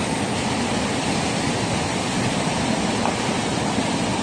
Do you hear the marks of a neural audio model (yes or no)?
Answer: no